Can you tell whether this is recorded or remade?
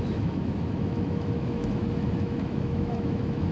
remade